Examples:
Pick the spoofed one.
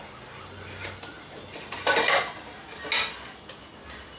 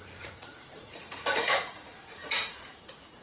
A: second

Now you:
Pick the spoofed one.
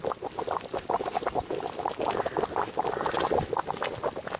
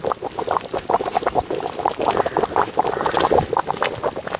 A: second